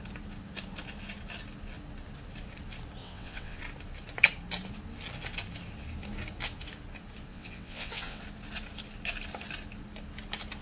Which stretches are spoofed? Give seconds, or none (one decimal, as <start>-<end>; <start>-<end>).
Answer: 3.0-3.6; 7.3-8.2